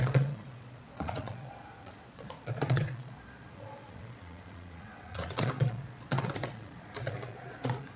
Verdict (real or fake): fake